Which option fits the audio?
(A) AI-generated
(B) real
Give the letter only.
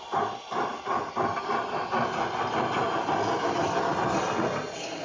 B